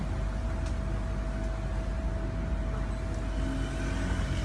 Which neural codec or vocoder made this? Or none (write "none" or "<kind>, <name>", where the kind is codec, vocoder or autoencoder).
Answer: none